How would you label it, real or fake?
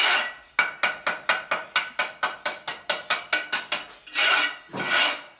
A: real